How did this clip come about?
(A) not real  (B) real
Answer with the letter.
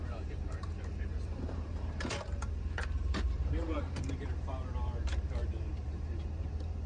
A